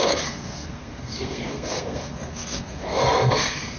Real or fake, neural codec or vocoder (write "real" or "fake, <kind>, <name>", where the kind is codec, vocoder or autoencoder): fake, codec, SNAC